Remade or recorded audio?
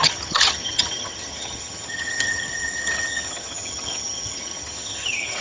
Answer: remade